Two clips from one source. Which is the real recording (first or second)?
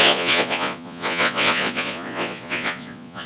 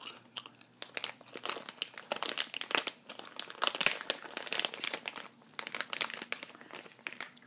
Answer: second